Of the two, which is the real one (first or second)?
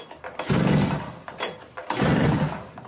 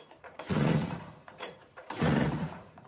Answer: first